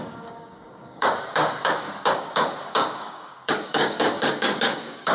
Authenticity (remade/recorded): remade